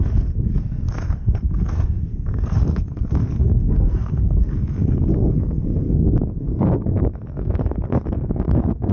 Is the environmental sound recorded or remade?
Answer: remade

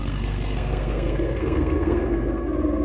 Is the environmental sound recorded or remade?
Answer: remade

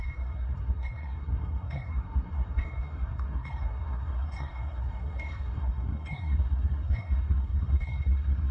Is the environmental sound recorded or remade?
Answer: remade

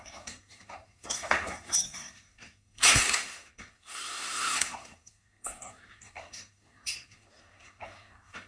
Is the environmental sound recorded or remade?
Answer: remade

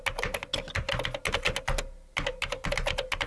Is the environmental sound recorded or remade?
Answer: recorded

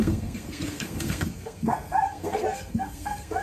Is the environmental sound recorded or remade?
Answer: remade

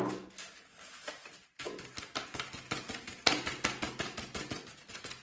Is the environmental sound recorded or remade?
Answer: recorded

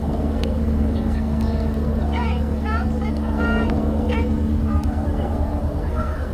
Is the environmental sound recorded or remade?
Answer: remade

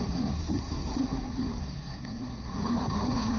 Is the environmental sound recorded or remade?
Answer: remade